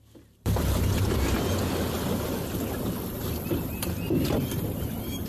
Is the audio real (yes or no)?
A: no